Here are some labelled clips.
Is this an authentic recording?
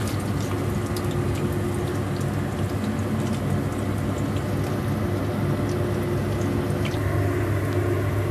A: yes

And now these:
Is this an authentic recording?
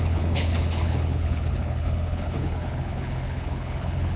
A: no